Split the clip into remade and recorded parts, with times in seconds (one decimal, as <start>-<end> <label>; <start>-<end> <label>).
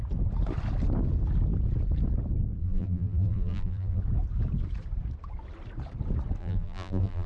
0.0-2.6 recorded; 2.6-4.0 remade; 4.0-6.4 recorded; 6.4-7.3 remade